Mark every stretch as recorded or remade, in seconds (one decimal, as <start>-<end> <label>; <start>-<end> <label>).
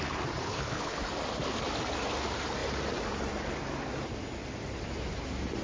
0.0-0.4 recorded; 0.4-1.1 remade; 1.1-5.6 recorded